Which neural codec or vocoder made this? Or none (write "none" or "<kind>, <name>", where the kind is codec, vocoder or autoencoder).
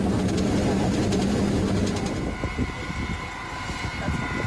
none